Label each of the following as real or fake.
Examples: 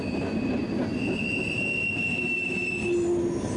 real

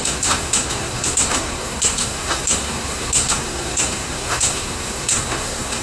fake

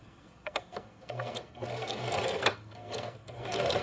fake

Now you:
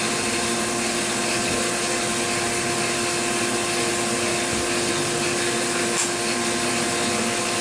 real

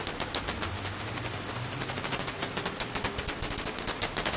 real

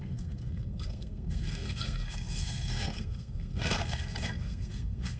fake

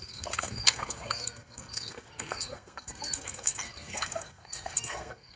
fake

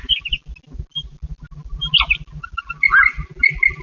real